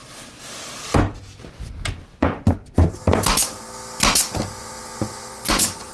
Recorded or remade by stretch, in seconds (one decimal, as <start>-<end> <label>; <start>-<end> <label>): 0.0-2.1 recorded; 2.1-2.6 remade; 2.6-4.6 recorded; 4.6-5.9 remade